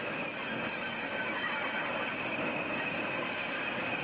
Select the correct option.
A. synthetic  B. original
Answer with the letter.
B